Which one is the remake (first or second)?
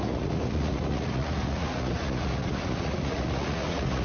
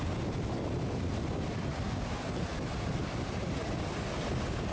first